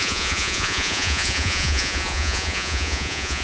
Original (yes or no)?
no